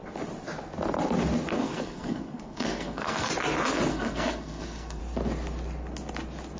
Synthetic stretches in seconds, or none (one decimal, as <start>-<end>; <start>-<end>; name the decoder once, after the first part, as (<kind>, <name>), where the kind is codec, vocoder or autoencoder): 1.5-3.3 (codec, SNAC); 3.9-5.0